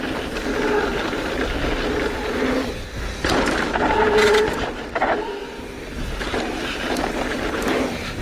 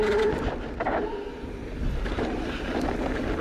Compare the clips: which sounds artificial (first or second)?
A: second